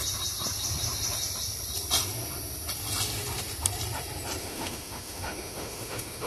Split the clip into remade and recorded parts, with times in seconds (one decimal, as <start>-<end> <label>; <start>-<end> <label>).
0.0-4.4 recorded; 4.4-6.3 remade